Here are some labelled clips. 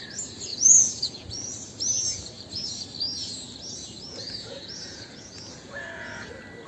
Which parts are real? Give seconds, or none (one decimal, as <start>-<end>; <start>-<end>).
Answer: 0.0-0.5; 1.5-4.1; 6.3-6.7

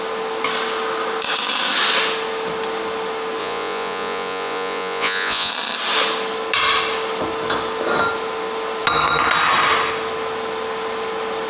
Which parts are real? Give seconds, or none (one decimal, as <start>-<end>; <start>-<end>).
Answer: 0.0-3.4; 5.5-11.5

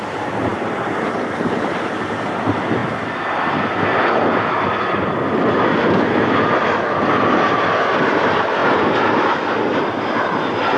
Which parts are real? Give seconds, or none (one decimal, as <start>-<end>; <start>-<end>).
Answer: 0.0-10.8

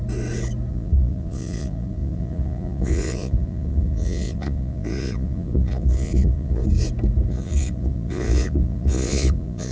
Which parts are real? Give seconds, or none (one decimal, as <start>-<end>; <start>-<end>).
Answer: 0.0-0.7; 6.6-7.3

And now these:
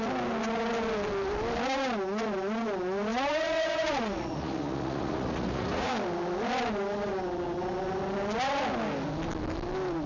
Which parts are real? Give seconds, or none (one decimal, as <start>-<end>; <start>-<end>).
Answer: 0.0-3.1; 5.9-10.1

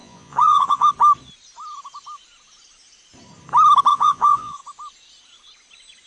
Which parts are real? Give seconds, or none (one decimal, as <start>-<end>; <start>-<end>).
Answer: 0.9-3.9; 4.6-6.1